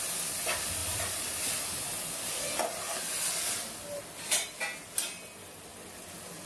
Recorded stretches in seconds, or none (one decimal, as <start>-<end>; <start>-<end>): 0.0-0.8; 4.0-5.7